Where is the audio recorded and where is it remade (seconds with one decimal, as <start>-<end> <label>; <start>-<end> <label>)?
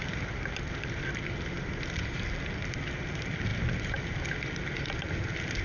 0.0-5.6 remade